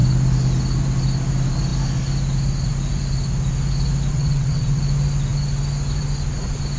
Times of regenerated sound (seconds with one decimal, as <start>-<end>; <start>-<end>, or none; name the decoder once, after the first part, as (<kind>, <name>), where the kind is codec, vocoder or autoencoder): 4.1-4.8 (vocoder, WaveNeXt)